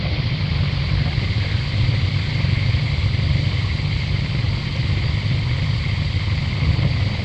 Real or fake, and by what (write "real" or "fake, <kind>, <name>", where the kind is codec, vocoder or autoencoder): fake, vocoder, BigVGAN v2